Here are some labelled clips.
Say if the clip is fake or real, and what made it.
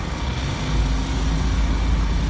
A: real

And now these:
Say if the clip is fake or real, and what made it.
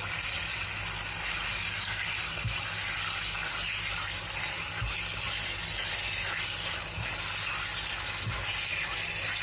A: real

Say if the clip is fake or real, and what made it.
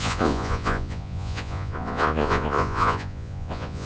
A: fake, vocoder, Vocos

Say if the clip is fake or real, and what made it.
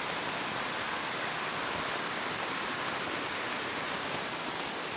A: real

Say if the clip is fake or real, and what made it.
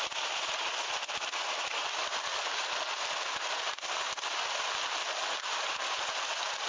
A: real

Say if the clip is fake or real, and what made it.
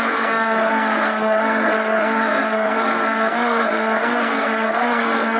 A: fake, codec, SNAC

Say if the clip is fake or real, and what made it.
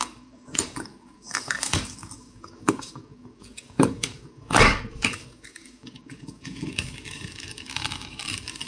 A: fake, codec, DAC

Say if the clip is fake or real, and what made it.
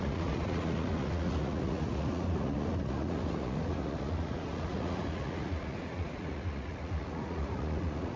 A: fake, vocoder, Vocos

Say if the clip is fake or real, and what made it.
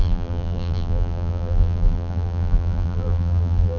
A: fake, vocoder, BigVGAN v2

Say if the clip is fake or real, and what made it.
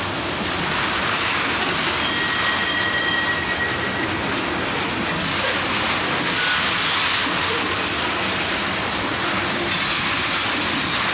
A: real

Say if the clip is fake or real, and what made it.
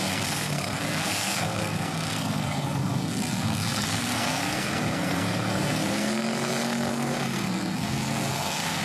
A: fake, codec, SNAC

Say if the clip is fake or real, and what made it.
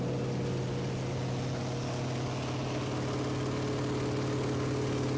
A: real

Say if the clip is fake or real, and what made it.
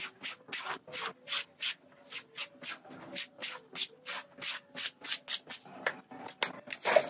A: real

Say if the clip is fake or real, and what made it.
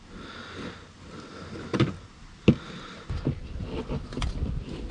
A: real